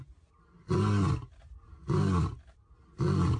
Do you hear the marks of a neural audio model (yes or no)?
no